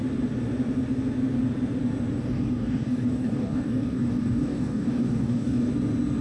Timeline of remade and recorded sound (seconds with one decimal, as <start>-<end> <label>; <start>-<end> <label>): 0.0-2.2 recorded; 2.2-5.7 remade; 5.7-6.2 recorded